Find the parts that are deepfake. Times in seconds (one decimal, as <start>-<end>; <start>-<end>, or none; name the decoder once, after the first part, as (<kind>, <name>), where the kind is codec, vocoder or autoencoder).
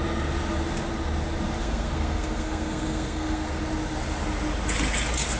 1.6-3.6 (codec, SNAC)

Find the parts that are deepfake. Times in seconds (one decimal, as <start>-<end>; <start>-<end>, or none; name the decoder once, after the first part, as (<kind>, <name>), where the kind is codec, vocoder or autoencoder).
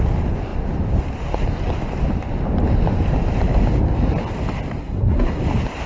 4.8-5.4 (codec, SNAC)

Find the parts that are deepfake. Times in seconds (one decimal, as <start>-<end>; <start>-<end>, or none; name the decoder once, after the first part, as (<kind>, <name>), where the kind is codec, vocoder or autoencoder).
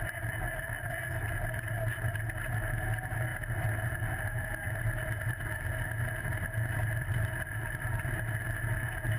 none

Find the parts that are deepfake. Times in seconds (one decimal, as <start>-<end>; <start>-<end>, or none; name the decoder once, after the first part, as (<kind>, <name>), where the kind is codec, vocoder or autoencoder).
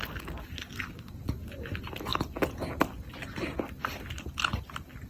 none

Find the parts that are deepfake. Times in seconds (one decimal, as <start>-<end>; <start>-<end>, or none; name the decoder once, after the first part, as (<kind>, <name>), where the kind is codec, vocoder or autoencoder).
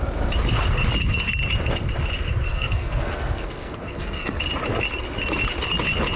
2.5-4.4 (codec, SNAC)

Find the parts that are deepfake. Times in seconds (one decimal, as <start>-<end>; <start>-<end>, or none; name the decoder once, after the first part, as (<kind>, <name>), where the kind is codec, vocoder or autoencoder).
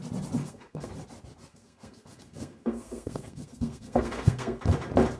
0.4-0.9 (codec, SNAC); 1.5-4.6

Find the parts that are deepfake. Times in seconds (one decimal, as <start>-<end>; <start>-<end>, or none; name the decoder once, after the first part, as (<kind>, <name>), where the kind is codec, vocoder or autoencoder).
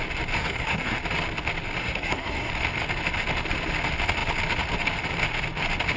0.4-1.0 (codec, SNAC); 1.8-2.5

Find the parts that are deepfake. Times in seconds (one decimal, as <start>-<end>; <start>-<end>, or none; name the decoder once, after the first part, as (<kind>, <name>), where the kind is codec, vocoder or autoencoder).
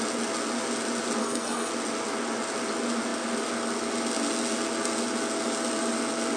1.2-1.7 (codec, SNAC)